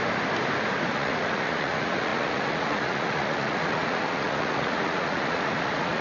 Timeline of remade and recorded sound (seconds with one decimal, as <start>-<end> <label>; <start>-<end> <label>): 0.0-0.9 recorded; 0.9-6.0 remade